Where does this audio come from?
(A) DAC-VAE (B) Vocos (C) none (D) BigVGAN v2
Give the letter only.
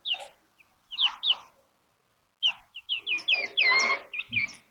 C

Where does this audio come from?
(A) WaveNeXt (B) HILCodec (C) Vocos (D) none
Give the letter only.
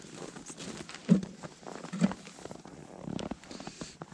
D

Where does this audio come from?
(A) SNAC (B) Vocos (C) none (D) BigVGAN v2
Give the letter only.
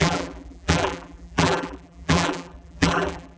D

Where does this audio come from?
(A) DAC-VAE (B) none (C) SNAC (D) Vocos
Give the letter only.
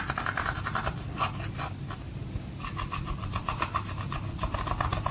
B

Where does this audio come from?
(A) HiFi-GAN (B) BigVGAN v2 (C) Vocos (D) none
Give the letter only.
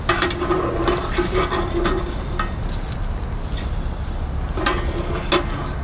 D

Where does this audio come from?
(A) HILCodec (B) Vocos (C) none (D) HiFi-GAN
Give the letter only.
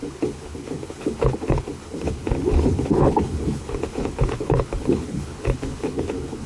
A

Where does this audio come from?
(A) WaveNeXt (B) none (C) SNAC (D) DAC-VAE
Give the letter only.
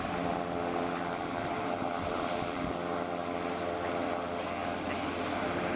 B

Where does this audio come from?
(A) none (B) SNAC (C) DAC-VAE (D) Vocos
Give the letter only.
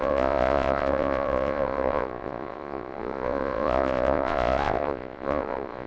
D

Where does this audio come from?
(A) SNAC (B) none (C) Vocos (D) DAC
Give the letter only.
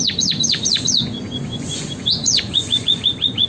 C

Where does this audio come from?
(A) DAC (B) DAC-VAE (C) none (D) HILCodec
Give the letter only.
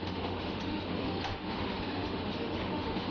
B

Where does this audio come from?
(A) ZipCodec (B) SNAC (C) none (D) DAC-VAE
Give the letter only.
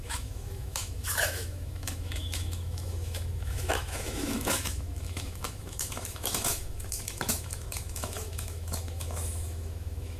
D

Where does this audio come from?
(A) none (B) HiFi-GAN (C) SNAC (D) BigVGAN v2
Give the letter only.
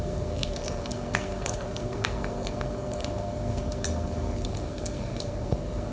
C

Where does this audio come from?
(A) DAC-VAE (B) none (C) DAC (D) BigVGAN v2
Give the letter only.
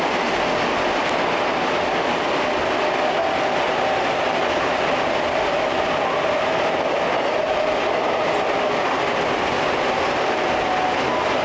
B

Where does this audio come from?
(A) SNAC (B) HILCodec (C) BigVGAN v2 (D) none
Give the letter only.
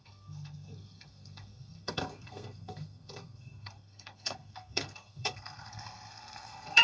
A